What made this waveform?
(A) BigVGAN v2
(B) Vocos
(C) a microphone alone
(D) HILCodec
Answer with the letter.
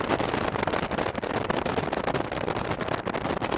C